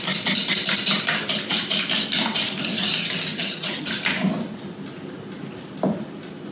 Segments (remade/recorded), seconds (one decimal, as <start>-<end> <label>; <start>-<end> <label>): 0.0-3.3 recorded; 3.3-3.9 remade; 3.9-6.5 recorded